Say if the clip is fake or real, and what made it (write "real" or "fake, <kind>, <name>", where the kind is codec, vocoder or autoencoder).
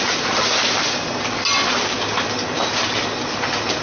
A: real